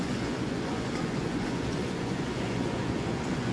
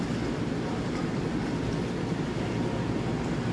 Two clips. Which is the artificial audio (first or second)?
first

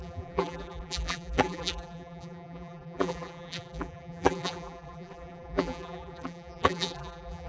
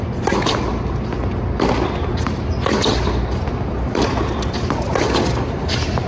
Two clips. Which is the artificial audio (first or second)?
first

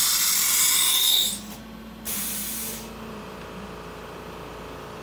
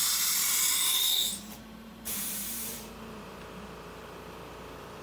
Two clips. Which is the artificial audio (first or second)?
second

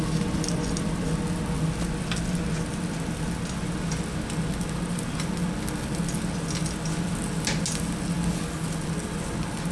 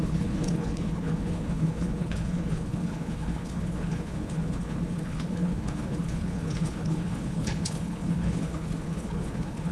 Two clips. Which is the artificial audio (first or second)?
second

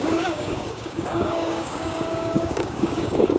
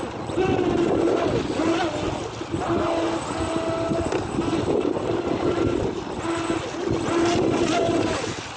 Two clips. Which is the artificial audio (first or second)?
first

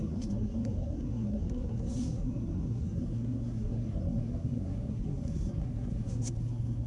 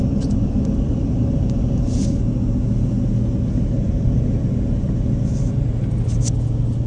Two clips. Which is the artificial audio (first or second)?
first